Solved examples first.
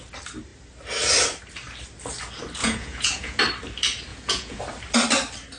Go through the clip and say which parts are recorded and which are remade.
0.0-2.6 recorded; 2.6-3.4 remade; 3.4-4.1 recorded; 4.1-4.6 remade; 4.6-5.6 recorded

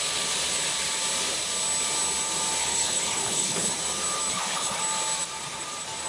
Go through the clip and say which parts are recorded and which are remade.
0.0-2.6 recorded; 2.6-3.7 remade; 3.7-4.3 recorded; 4.3-4.8 remade; 4.8-6.1 recorded

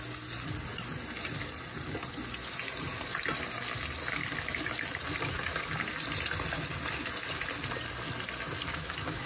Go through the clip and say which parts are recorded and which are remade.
0.0-8.7 recorded; 8.7-9.3 remade

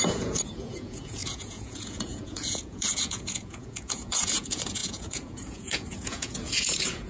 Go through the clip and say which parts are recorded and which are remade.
0.0-7.1 remade